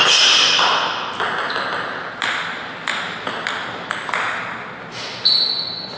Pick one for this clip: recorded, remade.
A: recorded